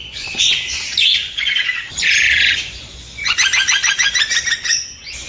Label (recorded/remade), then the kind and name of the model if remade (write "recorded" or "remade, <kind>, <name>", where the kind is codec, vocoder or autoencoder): remade, vocoder, Vocos